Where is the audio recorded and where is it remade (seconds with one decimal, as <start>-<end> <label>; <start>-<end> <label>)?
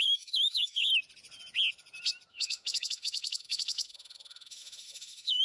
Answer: 0.0-0.9 remade; 0.9-2.3 recorded; 2.3-5.4 remade